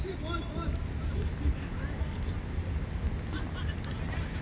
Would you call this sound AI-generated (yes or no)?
no